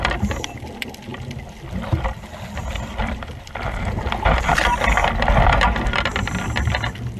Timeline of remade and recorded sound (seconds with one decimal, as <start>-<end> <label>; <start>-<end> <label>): 0.0-2.6 recorded; 2.6-3.5 remade; 3.5-7.2 recorded